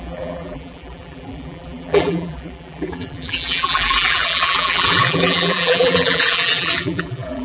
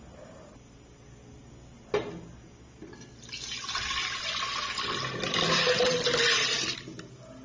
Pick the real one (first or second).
second